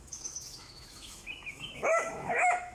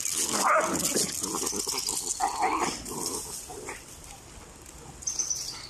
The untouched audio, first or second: second